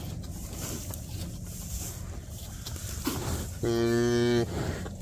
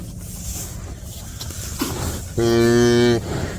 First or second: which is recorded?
second